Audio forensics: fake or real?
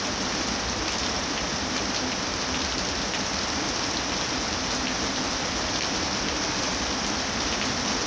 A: real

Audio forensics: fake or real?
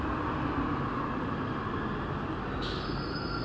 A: real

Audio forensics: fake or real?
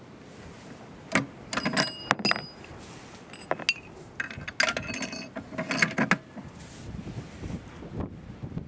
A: real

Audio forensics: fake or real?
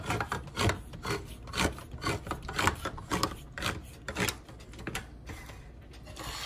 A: real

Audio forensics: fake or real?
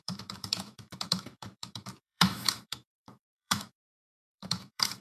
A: fake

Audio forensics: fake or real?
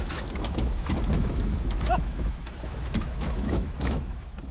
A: fake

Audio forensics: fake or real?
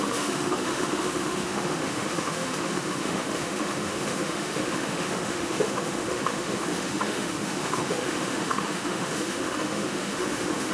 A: fake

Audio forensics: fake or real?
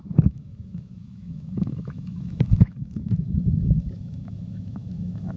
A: fake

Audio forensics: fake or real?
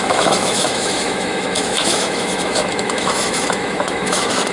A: fake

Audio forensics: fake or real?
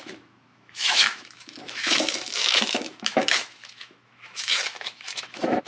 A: fake